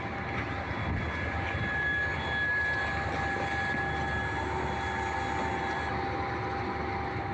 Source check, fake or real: real